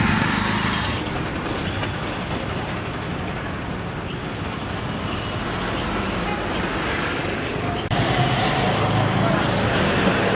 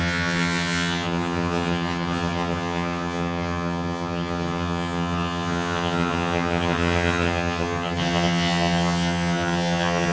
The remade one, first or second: second